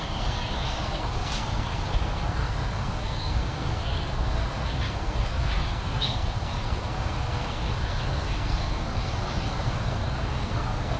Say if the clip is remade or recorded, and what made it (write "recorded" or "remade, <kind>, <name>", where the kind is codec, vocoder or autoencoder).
remade, codec, SNAC